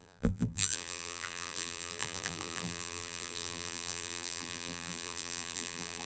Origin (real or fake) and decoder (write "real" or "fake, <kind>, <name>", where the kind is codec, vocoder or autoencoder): fake, vocoder, BigVGAN v2